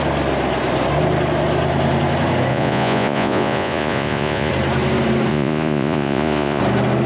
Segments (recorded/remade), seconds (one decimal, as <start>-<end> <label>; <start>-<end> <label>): 0.0-2.5 recorded; 2.5-4.5 remade; 4.5-5.3 recorded; 5.3-6.6 remade; 6.6-7.1 recorded